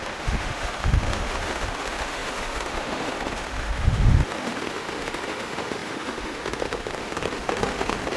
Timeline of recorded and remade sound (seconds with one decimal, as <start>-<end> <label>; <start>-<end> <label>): 0.0-8.2 remade